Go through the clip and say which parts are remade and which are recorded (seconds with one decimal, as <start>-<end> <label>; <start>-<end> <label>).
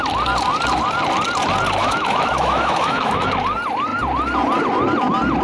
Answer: 0.0-1.8 recorded; 1.8-3.3 remade; 3.3-5.4 recorded